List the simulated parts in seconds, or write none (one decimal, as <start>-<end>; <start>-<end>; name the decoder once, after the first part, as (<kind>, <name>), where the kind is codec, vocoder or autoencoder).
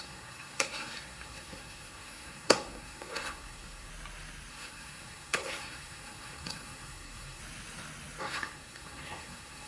0.0-3.9 (codec, SNAC); 4.5-7.4; 8.2-9.7